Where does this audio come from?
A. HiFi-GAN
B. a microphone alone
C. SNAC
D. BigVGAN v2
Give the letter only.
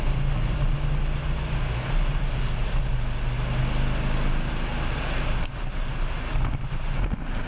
B